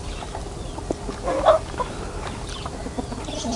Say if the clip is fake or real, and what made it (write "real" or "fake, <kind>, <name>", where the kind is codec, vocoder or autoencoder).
real